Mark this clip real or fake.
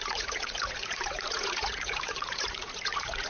fake